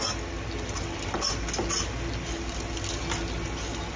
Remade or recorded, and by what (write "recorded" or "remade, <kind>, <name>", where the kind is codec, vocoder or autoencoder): recorded